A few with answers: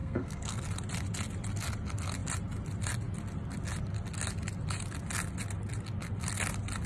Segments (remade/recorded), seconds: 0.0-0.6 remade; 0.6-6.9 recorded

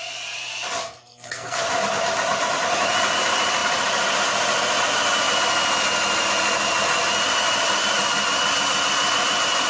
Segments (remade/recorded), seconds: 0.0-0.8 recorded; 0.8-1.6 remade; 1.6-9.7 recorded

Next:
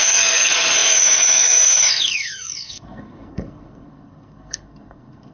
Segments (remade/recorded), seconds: 0.0-5.3 remade

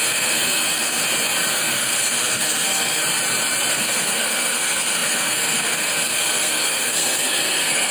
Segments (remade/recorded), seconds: 0.0-1.0 remade; 1.0-1.5 recorded; 1.5-3.0 remade; 3.0-3.7 recorded; 3.7-7.9 remade

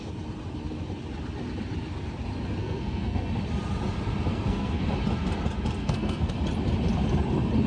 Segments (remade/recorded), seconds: 0.0-2.6 recorded; 2.6-3.3 remade; 3.3-4.3 recorded; 4.3-4.9 remade; 4.9-5.8 recorded; 5.8-6.3 remade; 6.3-7.7 recorded

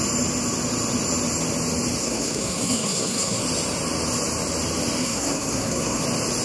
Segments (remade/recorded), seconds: 0.0-2.0 recorded; 2.0-3.4 remade; 3.4-5.0 recorded; 5.0-6.0 remade; 6.0-6.4 recorded

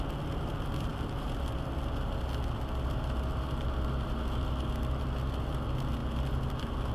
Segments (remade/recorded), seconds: 0.0-6.9 recorded

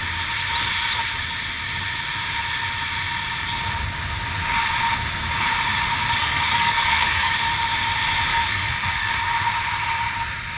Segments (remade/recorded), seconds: 0.0-6.2 recorded; 6.2-7.3 remade; 7.3-8.3 recorded; 8.3-9.1 remade; 9.1-10.6 recorded